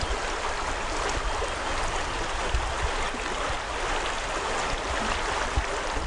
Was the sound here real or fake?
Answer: real